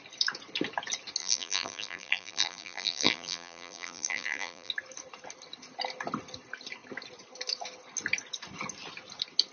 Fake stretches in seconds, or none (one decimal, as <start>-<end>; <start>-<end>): 1.2-4.7